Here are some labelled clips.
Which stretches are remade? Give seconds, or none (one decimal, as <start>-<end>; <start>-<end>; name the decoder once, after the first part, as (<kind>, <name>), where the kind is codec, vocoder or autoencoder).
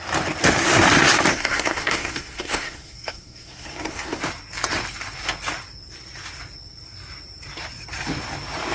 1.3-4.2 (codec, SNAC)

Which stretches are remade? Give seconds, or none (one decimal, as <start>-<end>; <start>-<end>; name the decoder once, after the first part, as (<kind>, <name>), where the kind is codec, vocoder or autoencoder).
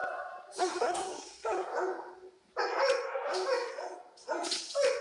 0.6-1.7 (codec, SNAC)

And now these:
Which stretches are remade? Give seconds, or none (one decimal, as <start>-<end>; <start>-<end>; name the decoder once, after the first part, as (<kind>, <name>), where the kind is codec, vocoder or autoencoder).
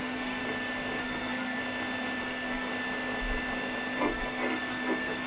0.0-0.4 (codec, SNAC); 1.0-1.6; 2.2-2.7; 4.0-5.3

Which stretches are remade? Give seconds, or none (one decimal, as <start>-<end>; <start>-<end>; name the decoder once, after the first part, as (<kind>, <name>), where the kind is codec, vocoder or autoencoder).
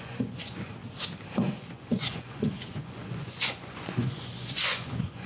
0.0-0.8 (vocoder, Vocos); 1.4-5.3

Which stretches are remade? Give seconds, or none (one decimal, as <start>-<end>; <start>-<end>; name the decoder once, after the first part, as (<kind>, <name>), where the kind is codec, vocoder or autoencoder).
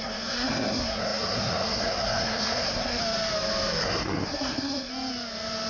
0.0-3.0 (codec, SNAC); 3.8-4.9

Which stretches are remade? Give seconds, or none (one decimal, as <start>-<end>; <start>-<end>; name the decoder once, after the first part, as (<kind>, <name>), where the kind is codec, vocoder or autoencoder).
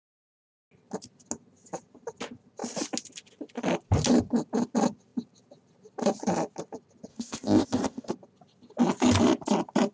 7.1-8.1 (codec, ZipCodec)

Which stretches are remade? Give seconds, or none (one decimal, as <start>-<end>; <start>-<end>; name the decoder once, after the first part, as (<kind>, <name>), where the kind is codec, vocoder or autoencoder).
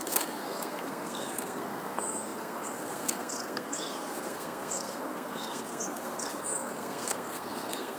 0.0-8.0 (codec, SNAC)